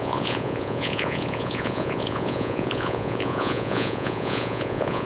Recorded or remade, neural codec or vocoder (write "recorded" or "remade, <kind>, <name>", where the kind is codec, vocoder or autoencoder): remade, vocoder, Vocos